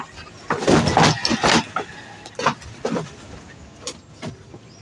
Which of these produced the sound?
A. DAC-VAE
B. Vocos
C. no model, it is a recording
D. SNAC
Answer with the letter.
C